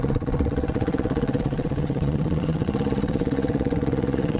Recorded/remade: remade